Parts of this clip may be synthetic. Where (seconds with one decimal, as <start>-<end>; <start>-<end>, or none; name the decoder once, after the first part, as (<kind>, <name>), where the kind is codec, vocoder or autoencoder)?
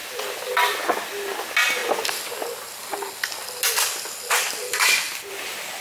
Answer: 1.4-1.8 (vocoder, BigVGAN v2); 5.3-5.8